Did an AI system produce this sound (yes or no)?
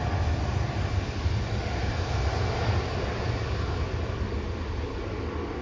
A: no